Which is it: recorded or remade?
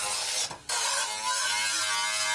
recorded